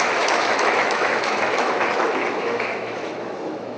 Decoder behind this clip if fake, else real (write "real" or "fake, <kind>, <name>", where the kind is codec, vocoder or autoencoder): fake, autoencoder, DAC-VAE